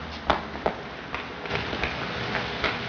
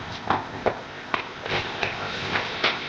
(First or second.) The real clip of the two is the first